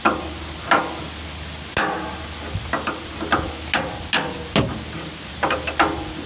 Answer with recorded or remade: recorded